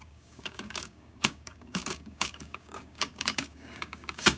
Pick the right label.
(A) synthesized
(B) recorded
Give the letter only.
A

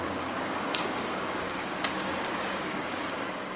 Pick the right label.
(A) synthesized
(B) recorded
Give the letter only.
A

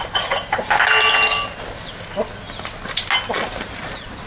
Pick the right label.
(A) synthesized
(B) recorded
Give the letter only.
B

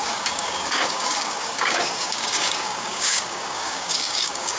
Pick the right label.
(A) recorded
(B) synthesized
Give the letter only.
B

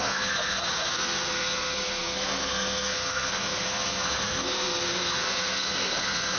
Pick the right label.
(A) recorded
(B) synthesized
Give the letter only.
B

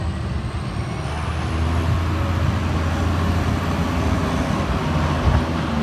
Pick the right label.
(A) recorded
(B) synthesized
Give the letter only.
A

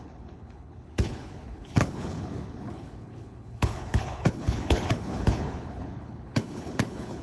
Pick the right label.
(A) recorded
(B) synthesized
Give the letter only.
B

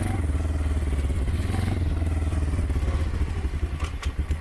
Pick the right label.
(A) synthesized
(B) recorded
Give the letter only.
B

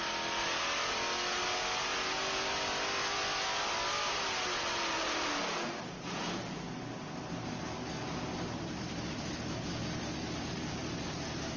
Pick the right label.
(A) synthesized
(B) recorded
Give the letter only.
B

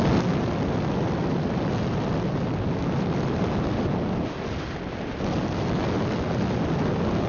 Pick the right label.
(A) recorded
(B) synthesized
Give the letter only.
A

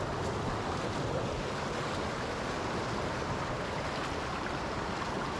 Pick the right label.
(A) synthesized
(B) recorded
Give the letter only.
B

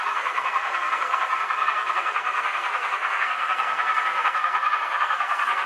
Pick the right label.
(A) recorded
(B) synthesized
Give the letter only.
B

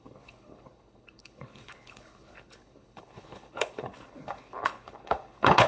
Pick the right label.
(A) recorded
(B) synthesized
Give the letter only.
B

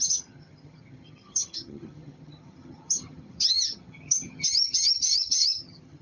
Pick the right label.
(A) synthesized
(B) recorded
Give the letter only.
A